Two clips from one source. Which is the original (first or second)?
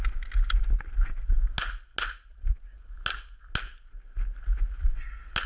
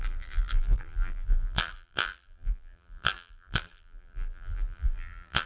first